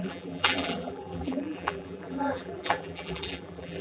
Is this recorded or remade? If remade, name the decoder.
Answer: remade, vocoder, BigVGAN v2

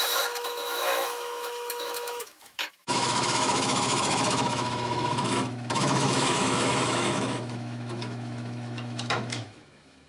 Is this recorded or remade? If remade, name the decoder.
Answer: remade, autoencoder, DAC-VAE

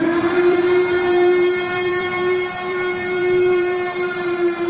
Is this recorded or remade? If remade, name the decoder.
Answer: remade, vocoder, BigVGAN v2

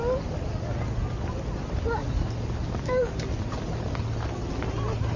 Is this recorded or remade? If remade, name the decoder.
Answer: recorded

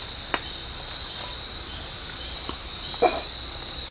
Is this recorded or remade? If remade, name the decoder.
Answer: recorded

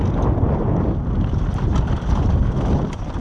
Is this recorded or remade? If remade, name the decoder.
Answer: recorded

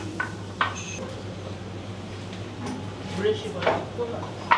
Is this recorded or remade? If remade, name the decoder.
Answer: remade, vocoder, BigVGAN v2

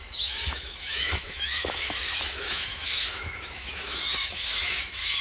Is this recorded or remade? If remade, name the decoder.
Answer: remade, autoencoder, DAC-VAE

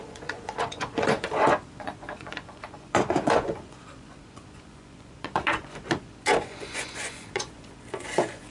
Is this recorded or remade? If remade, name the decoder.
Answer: remade, vocoder, Vocos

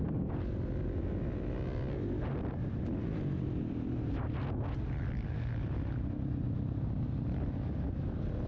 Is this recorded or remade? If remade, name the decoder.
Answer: recorded